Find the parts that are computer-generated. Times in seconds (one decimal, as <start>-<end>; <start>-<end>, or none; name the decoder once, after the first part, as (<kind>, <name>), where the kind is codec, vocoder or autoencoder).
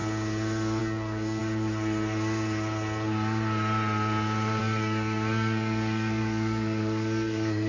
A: 0.8-1.4 (codec, DAC); 4.6-7.7